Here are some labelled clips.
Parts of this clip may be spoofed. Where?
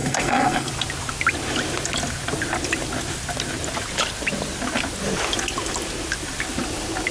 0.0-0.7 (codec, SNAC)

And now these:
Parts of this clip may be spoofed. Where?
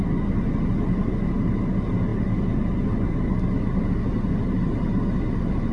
none